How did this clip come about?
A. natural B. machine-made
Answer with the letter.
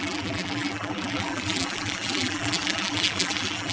B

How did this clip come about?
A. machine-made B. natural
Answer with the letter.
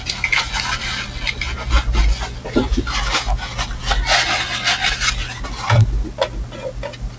B